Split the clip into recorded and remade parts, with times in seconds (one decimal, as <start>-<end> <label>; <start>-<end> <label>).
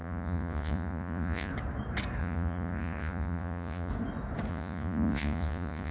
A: 0.0-1.5 remade; 1.5-2.2 recorded; 2.2-3.9 remade; 3.9-4.5 recorded; 4.5-5.9 remade